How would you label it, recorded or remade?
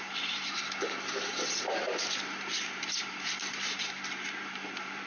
remade